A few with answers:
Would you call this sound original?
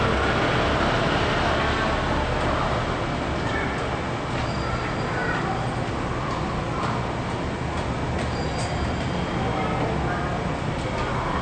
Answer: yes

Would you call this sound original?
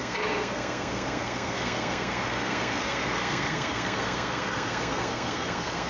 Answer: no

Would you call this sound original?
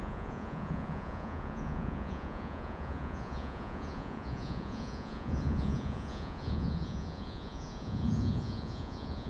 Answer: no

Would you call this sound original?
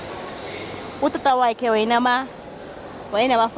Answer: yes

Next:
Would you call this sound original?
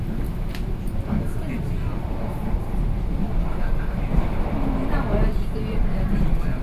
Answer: no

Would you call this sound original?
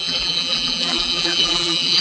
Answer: no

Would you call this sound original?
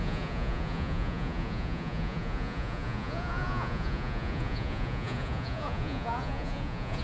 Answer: no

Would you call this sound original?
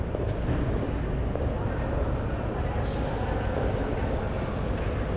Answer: yes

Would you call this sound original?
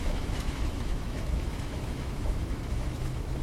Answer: no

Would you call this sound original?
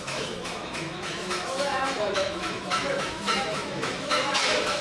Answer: no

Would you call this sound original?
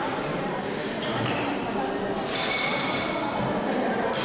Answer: yes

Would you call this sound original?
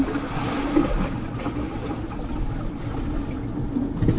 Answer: yes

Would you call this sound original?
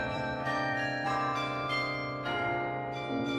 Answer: no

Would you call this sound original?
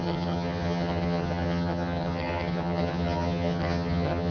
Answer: no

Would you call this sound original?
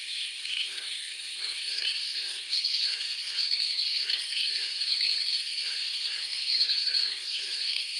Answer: no